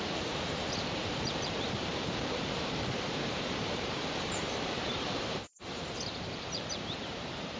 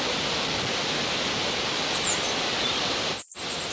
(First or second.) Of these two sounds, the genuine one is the second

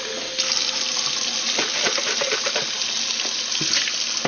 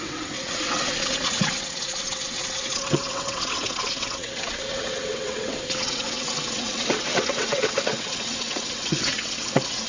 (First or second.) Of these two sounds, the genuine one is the first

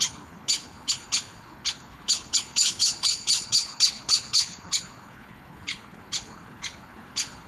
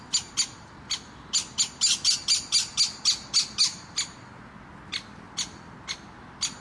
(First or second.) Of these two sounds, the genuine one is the second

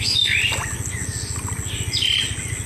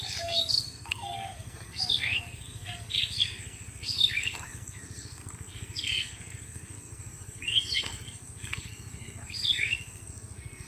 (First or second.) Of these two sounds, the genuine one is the first